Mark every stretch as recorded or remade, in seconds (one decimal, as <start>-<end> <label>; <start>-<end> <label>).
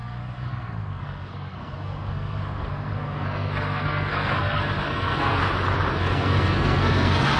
0.0-5.4 remade; 5.4-5.9 recorded; 5.9-7.4 remade